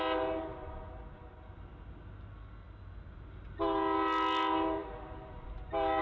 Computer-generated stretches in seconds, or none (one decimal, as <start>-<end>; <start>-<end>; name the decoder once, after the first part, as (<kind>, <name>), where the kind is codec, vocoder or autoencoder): none

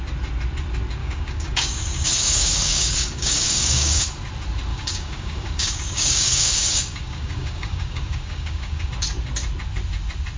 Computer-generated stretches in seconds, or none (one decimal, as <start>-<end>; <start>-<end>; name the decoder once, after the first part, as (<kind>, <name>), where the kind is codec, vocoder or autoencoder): 1.0-4.0 (codec, DAC); 4.7-8.9

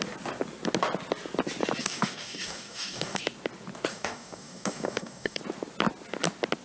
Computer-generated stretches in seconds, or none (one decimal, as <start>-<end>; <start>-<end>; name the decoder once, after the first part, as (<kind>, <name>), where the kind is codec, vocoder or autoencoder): 1.8-3.2 (codec, DAC); 3.9-5.4

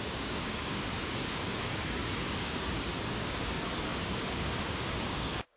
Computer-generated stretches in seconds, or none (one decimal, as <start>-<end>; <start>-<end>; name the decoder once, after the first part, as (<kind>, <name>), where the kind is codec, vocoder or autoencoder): 0.0-5.6 (codec, DAC)

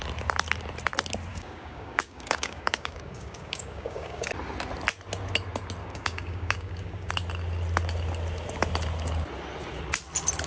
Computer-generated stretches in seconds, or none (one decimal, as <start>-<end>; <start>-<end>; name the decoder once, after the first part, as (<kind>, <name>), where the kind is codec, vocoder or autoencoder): 1.3-4.3 (codec, DAC); 5.8-7.1

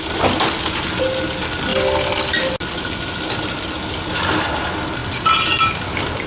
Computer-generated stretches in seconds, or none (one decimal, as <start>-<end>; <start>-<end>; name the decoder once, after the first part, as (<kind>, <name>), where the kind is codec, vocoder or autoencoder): none

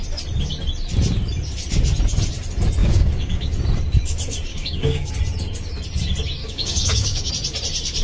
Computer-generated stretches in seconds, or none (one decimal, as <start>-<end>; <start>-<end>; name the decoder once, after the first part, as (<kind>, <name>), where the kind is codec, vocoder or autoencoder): 2.8-3.5 (codec, DAC); 4.5-5.1; 6.4-7.3